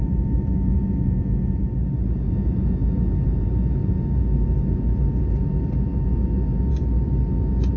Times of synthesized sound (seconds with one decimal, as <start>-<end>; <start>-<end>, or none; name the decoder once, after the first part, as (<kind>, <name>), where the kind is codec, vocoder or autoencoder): 6.7-7.3 (vocoder, BigVGAN v2)

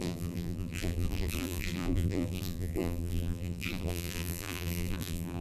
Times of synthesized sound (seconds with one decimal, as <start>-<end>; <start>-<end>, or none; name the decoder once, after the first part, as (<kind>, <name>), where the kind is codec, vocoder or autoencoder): 0.0-5.4 (vocoder, BigVGAN v2)

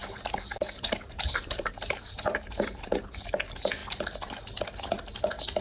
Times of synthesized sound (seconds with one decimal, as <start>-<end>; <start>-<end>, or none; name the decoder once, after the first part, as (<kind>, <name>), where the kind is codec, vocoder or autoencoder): 0.0-3.4 (vocoder, BigVGAN v2)